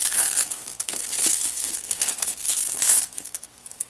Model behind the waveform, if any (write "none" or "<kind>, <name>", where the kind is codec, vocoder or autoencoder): codec, SNAC